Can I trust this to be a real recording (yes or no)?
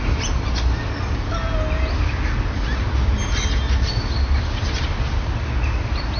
yes